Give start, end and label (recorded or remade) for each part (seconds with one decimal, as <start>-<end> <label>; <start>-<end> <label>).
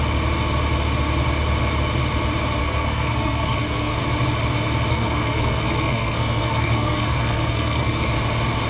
0.0-2.6 recorded; 2.6-4.0 remade; 4.0-4.9 recorded; 4.9-8.1 remade; 8.1-8.7 recorded